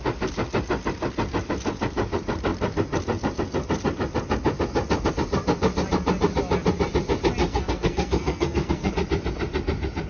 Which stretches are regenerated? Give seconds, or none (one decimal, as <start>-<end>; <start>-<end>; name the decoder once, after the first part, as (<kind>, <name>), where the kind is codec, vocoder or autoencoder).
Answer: 7.4-8.9 (codec, SNAC)